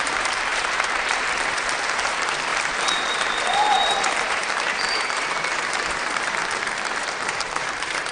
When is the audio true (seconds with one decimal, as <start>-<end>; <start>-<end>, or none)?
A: 6.4-7.0